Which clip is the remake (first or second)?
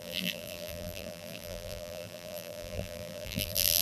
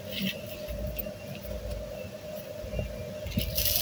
first